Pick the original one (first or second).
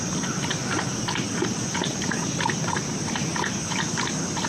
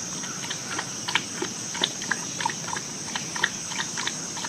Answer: first